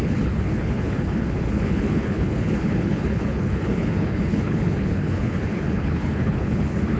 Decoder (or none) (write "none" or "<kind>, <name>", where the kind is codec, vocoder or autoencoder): codec, HILCodec